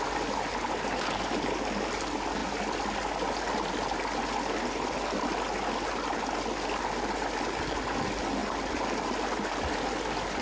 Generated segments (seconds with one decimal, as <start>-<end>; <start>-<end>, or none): none